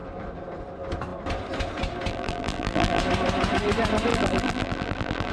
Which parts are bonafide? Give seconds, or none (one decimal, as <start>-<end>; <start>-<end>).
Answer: 0.0-2.1; 3.0-4.1